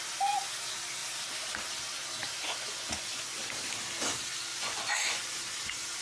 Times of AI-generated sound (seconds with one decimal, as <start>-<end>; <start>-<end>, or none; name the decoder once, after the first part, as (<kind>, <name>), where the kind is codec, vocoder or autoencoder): 2.4-3.4 (vocoder, Vocos); 4.5-5.3